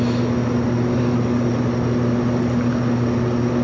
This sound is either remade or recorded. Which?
recorded